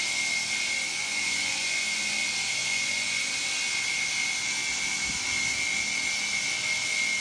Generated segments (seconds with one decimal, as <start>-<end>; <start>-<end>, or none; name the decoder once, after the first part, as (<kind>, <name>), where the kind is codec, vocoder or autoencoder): 1.0-2.2 (vocoder, Vocos); 2.6-3.3